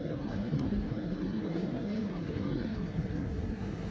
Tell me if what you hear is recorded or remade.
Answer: remade